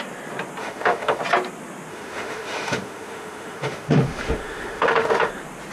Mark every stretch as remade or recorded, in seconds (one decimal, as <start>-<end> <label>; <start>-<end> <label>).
0.0-0.6 recorded; 0.6-1.2 remade; 1.2-1.9 recorded; 1.9-5.3 remade; 5.3-5.7 recorded